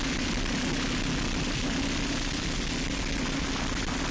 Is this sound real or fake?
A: real